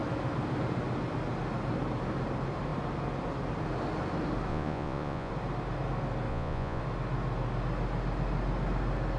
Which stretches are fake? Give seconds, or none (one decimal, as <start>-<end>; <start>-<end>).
4.5-5.3; 6.3-6.8